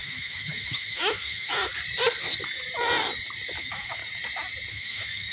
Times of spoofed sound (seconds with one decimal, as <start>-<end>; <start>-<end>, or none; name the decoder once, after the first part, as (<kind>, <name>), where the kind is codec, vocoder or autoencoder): 0.0-1.7 (autoencoder, DAC-VAE); 3.6-4.0; 4.7-5.3